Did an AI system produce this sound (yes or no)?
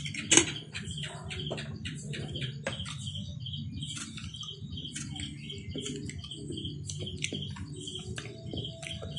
no